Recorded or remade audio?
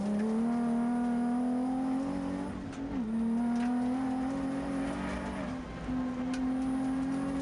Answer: recorded